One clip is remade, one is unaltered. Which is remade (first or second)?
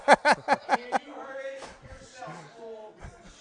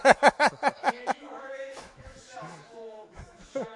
second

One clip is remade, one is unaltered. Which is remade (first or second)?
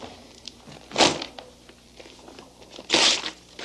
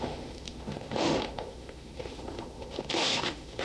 second